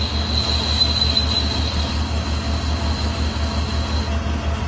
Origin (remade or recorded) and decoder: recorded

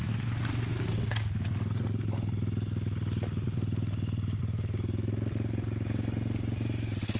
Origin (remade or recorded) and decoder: recorded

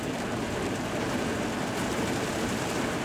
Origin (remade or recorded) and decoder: recorded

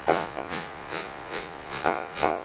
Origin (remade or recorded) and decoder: remade, vocoder, Vocos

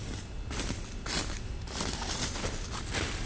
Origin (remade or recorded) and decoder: recorded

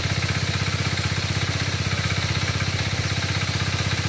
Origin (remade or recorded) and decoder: recorded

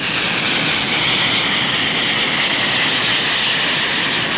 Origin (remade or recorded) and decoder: recorded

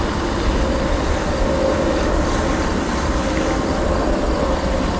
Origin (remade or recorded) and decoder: recorded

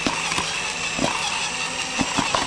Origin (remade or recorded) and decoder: recorded